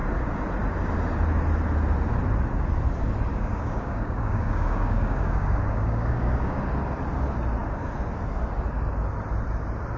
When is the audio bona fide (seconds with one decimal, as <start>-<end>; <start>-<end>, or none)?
0.0-3.3; 6.6-10.0